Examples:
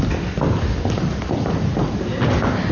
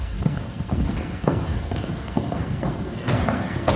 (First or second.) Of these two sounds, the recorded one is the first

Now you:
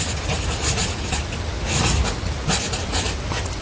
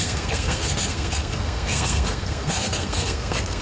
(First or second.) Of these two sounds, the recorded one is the first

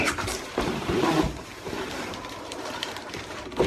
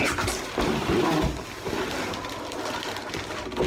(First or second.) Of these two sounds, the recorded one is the second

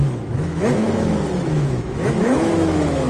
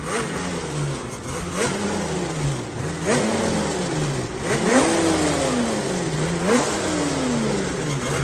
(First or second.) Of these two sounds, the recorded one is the second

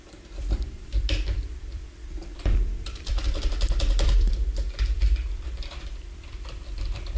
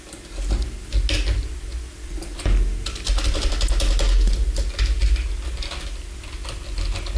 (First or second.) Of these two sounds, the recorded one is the second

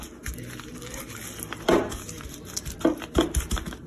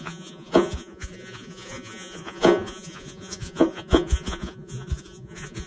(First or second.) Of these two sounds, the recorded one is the first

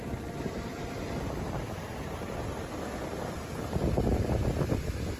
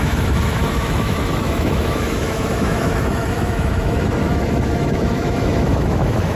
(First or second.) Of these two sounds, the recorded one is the first